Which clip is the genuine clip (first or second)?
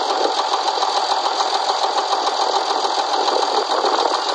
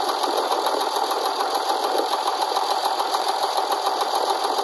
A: first